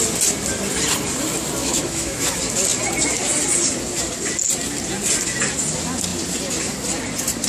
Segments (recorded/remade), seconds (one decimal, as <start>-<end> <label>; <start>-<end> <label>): 0.0-1.6 recorded; 1.6-2.3 remade; 2.3-7.5 recorded

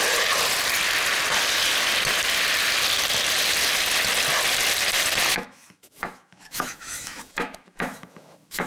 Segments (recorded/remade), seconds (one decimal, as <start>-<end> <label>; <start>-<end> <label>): 0.0-5.3 recorded; 5.3-8.7 remade

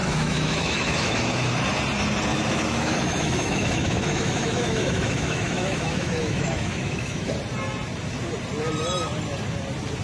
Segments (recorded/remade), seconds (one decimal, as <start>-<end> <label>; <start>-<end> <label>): 0.0-1.5 remade; 1.5-2.3 recorded; 2.3-7.3 remade; 7.3-10.0 recorded

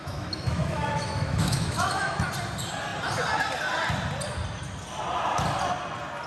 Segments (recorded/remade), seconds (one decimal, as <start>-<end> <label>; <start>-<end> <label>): 0.0-2.2 remade; 2.2-6.3 recorded

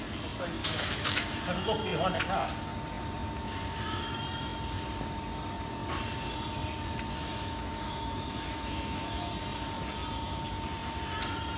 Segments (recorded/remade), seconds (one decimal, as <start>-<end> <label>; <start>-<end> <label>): 0.0-0.6 recorded; 0.6-1.4 remade; 1.4-7.2 recorded; 7.2-9.3 remade; 9.3-11.6 recorded

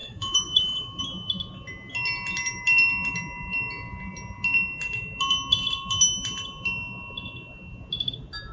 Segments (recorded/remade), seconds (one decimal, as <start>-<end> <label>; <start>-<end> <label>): 0.0-1.0 remade; 1.0-8.5 recorded

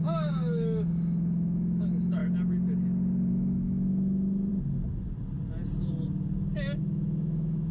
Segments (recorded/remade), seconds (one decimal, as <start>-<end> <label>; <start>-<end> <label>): 0.0-2.2 remade; 2.2-3.3 recorded; 3.3-4.5 remade; 4.5-6.8 recorded; 6.8-7.7 remade

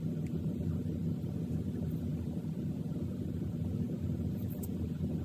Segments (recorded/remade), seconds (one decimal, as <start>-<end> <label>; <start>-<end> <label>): 0.0-5.2 recorded